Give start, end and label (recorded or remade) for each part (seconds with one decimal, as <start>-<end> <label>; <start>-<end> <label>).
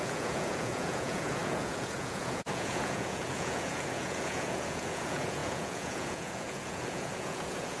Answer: 0.0-7.8 remade